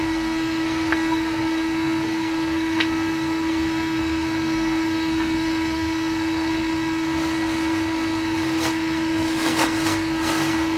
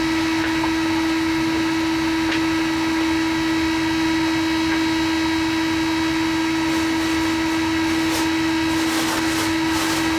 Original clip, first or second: second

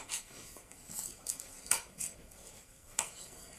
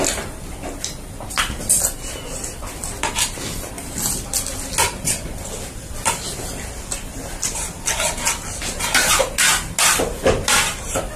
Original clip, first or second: second